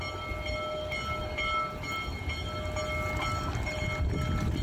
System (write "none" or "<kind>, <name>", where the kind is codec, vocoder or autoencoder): none